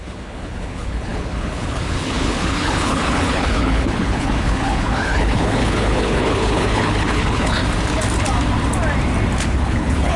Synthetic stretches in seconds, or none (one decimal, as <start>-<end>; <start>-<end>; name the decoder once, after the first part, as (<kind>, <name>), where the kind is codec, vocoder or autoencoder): 0.0-7.6 (codec, HILCodec); 9.4-10.2

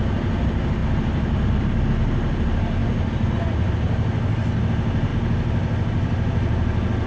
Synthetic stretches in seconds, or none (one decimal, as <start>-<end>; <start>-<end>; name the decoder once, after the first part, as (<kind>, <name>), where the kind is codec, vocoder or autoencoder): none